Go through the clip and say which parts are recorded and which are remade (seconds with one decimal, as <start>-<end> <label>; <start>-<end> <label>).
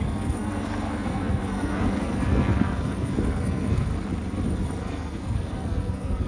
0.0-3.9 remade; 3.9-4.8 recorded; 4.8-6.3 remade